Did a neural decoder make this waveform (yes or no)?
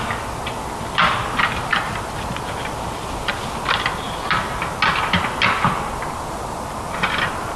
no